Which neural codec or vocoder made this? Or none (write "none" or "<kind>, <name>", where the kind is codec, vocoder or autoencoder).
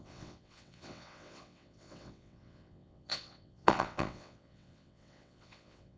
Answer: vocoder, WaveNeXt